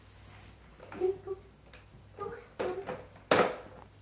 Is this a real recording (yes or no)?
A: yes